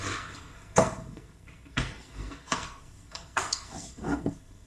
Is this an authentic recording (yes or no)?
no